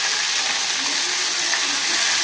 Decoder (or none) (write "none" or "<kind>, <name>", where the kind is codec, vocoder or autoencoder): none